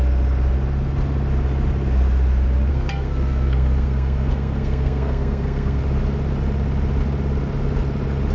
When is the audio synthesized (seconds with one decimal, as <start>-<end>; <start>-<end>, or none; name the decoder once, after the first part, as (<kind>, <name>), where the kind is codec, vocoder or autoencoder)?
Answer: 2.7-5.8 (codec, SNAC)